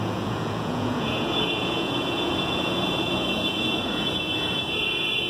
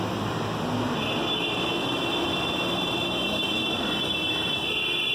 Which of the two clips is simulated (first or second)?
first